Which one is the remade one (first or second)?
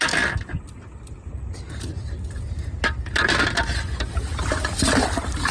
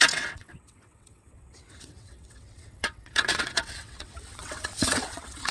second